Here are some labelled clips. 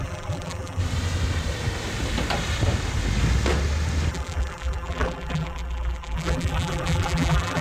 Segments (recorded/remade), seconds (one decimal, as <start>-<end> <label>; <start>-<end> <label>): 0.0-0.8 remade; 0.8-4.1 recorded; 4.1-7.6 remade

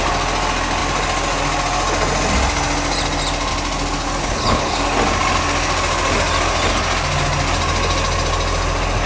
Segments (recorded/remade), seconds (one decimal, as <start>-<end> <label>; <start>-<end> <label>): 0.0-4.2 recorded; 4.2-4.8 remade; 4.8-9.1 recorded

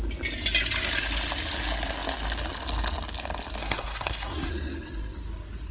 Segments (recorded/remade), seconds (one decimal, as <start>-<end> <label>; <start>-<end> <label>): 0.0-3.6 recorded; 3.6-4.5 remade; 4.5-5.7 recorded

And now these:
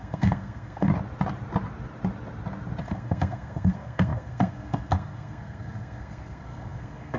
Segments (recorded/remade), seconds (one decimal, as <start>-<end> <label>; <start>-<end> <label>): 0.0-0.9 remade; 0.9-2.8 recorded; 2.8-7.2 remade

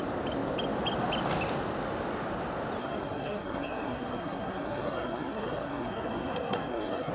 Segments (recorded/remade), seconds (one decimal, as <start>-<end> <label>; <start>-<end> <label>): 0.0-2.8 recorded; 2.8-7.1 remade

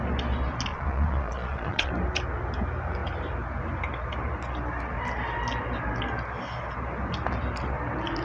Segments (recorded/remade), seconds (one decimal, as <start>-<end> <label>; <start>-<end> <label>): 0.0-0.7 recorded; 0.7-1.9 remade; 1.9-8.2 recorded

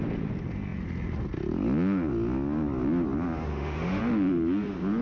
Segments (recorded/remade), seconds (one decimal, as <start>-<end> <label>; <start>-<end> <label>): 0.0-3.5 recorded; 3.5-4.0 remade; 4.0-5.0 recorded